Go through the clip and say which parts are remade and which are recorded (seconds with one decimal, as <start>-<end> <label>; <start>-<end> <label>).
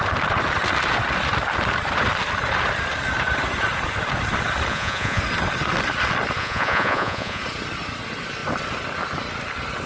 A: 0.0-4.7 recorded; 4.7-5.2 remade; 5.2-6.4 recorded; 6.4-7.4 remade; 7.4-9.9 recorded